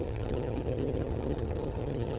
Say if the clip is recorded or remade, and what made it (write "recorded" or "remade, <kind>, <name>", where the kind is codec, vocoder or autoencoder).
remade, vocoder, HiFi-GAN